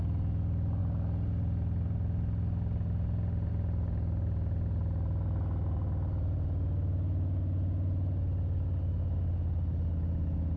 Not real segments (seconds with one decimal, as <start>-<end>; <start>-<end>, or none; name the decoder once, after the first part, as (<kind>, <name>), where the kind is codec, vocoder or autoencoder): none